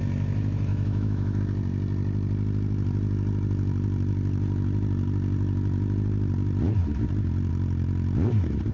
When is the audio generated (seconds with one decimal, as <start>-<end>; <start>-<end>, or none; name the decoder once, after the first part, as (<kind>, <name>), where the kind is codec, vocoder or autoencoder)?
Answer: 0.7-1.4 (autoencoder, DAC-VAE)